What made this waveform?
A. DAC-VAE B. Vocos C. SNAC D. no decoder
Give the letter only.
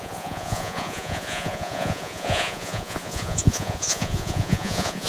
B